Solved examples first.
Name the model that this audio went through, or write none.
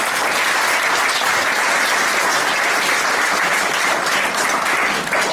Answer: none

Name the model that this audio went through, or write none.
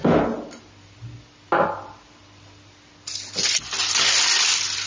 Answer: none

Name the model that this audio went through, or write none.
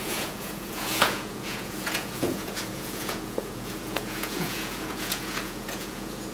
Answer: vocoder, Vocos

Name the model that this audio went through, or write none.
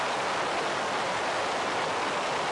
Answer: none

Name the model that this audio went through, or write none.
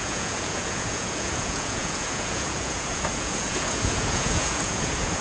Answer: vocoder, Vocos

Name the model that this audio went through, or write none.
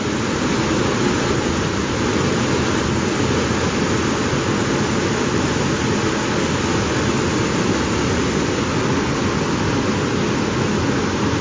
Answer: none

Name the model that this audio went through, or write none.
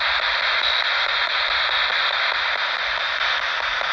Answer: none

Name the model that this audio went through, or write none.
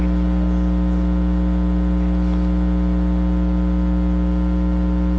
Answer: none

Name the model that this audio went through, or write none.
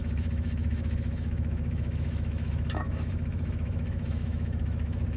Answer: autoencoder, DAC-VAE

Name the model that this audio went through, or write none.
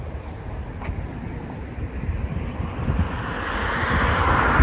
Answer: none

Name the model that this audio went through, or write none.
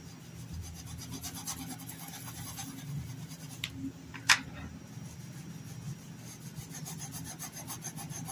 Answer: none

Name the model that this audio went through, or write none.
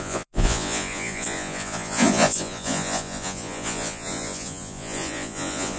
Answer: vocoder, Vocos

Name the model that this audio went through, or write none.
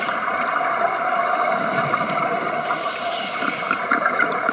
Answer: none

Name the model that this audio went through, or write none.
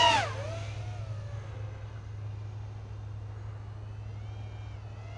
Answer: none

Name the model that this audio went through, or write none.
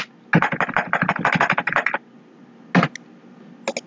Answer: none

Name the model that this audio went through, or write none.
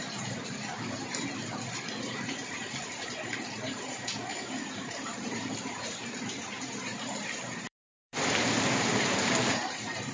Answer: vocoder, BigVGAN v2